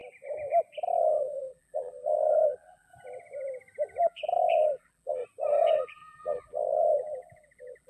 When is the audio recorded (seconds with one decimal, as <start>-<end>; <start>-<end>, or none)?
0.0-1.0; 2.9-4.0; 5.2-5.7